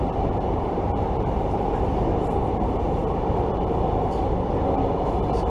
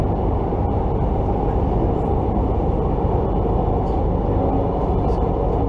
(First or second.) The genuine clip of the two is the second